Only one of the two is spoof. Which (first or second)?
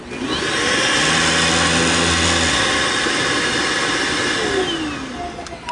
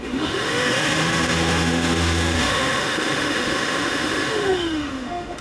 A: second